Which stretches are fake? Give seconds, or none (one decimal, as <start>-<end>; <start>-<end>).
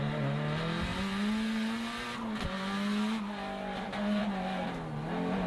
none